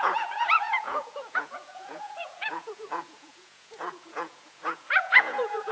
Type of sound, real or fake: fake